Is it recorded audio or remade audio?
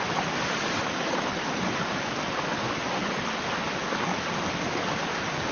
recorded